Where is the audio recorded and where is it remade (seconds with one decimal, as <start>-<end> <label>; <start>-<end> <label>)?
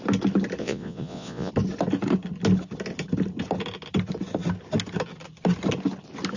0.0-0.6 recorded; 0.6-1.5 remade; 1.5-6.4 recorded